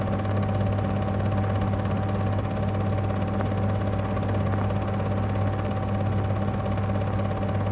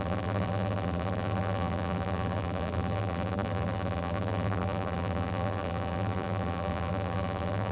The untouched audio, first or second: first